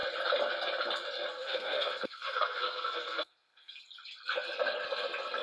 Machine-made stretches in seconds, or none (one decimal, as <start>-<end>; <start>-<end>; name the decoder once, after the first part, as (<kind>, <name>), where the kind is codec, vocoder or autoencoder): 1.3-3.8 (codec, SNAC)